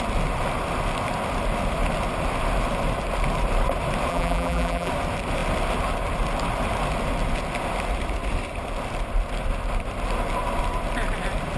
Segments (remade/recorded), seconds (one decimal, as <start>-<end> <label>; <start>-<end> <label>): 0.0-4.1 recorded; 4.1-4.9 remade; 4.9-11.6 recorded